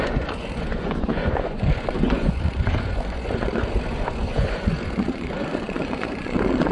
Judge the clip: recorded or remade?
remade